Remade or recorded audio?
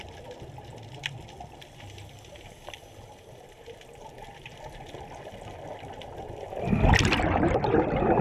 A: recorded